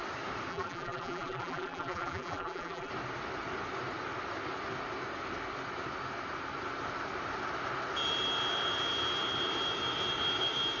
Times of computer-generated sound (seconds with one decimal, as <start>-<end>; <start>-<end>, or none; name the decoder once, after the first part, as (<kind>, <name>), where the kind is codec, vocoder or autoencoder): 0.5-2.9 (vocoder, BigVGAN v2)